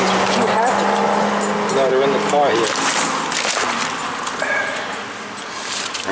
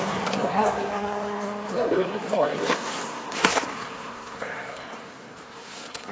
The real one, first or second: first